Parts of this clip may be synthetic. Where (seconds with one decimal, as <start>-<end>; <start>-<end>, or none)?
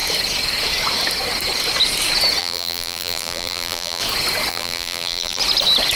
2.4-4.0; 4.5-5.4